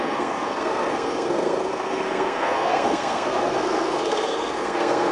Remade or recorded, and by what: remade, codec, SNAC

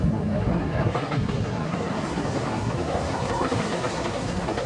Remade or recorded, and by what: remade, codec, SNAC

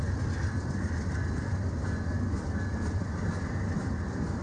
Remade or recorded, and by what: recorded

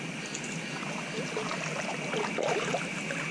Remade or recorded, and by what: recorded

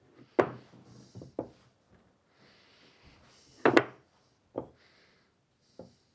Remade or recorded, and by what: recorded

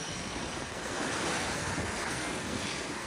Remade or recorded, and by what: remade, codec, SNAC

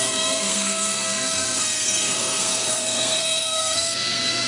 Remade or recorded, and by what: remade, codec, SNAC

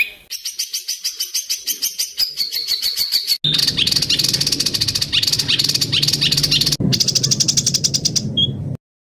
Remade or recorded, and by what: recorded